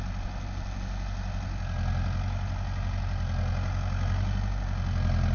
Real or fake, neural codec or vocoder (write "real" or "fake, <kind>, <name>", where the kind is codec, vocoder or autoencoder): real